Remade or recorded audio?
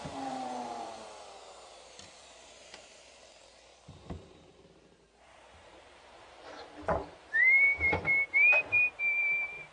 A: remade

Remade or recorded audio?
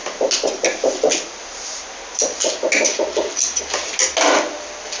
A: recorded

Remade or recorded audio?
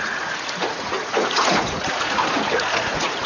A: remade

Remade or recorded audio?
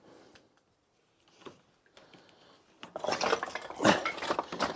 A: recorded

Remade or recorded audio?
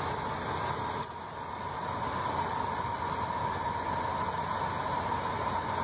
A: recorded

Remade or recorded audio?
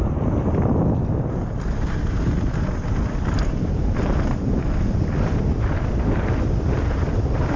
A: remade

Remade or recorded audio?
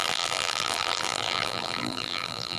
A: remade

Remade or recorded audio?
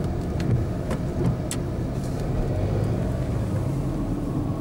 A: recorded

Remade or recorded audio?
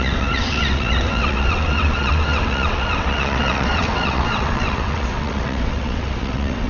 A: remade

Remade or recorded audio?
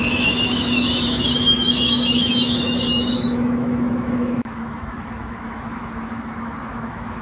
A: remade